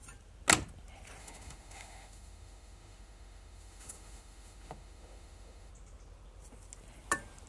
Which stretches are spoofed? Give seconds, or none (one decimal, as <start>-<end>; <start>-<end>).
1.2-5.7